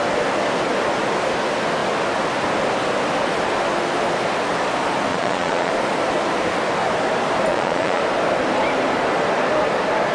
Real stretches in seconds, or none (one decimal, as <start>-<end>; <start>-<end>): 0.0-5.1; 5.7-7.5; 8.0-10.1